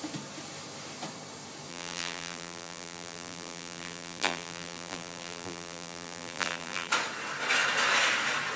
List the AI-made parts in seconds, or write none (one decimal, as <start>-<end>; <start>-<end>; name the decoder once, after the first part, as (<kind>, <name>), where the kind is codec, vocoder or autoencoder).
1.7-6.9 (vocoder, BigVGAN v2)